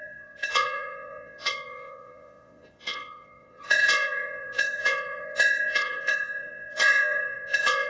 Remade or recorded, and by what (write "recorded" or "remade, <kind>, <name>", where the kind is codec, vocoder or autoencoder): remade, vocoder, Vocos